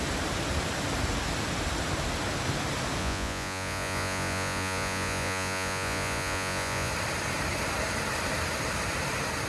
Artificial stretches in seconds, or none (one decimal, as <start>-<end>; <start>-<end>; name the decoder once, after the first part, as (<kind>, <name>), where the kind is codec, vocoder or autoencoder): 3.0-6.9 (vocoder, Vocos)